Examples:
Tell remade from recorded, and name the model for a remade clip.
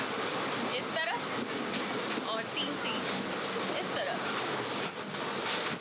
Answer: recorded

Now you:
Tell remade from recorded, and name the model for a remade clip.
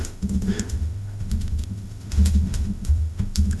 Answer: remade, autoencoder, DAC-VAE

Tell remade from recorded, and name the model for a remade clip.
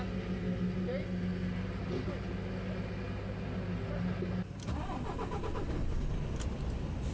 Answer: recorded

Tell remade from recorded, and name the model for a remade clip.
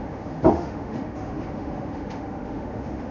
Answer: remade, autoencoder, DAC-VAE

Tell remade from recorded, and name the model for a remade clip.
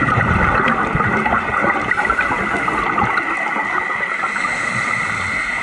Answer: recorded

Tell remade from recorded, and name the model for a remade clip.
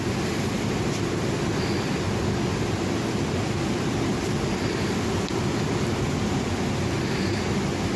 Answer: recorded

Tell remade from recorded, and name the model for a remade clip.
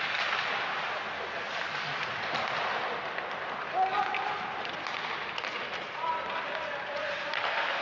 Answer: recorded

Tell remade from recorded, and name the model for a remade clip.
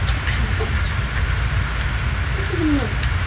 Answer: recorded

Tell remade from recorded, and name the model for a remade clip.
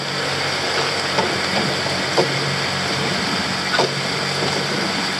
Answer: recorded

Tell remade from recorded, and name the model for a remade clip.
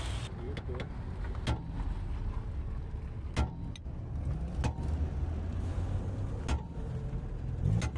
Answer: recorded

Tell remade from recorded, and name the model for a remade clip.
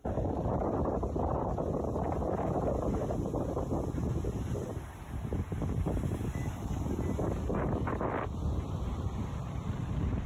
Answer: recorded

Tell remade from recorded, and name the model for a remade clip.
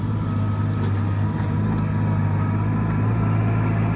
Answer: recorded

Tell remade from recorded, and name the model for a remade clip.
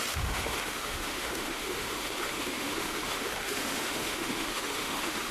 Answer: remade, autoencoder, DAC-VAE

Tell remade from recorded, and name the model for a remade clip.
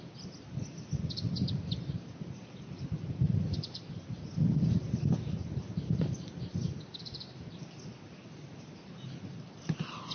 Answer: recorded